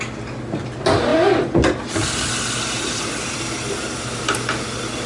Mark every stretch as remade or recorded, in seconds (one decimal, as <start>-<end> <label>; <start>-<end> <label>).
0.0-5.1 recorded